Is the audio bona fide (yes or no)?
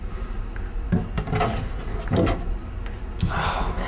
yes